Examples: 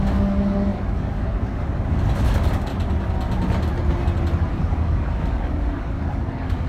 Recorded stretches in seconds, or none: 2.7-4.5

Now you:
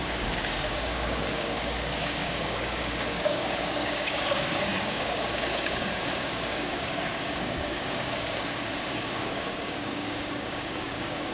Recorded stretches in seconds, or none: none